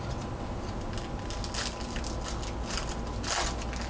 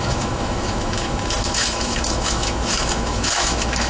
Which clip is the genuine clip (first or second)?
first